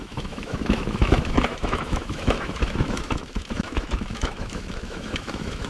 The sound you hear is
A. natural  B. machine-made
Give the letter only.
B